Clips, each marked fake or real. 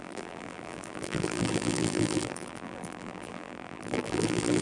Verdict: fake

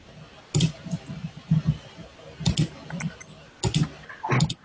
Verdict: real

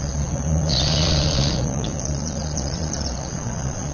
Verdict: fake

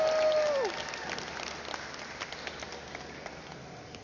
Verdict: real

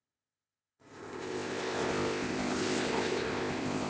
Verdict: fake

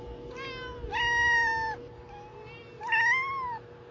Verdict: real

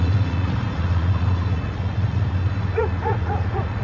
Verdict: fake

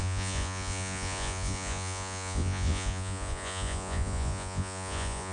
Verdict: fake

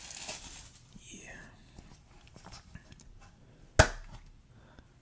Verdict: real